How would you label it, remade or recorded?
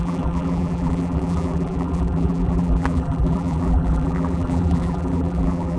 remade